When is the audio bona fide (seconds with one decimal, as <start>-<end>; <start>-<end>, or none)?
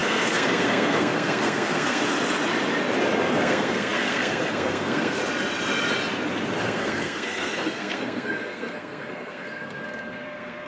2.0-3.3; 5.2-6.6